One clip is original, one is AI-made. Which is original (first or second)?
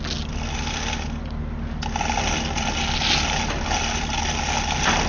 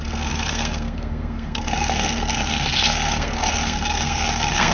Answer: first